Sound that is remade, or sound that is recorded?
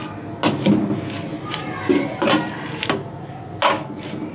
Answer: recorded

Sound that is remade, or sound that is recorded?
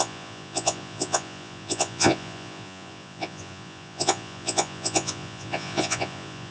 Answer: remade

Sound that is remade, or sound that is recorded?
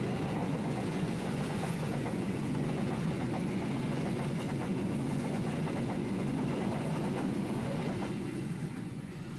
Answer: remade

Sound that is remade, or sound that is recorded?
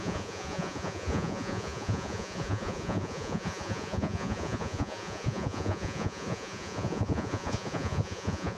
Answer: remade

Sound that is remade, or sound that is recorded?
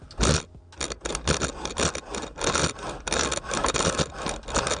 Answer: recorded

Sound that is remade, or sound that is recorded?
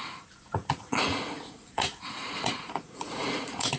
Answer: remade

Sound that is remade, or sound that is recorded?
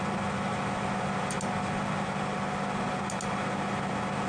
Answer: recorded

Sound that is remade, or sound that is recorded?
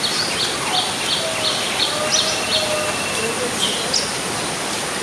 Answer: recorded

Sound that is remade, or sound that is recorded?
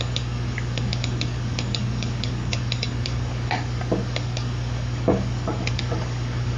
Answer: remade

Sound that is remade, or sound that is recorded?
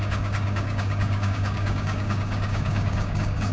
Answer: remade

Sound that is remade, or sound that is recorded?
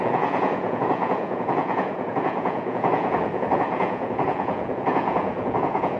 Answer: remade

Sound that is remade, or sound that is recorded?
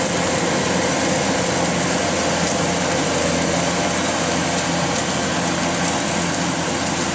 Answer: recorded